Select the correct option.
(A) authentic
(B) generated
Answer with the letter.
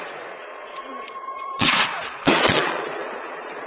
B